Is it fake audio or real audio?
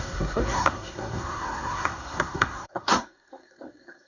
fake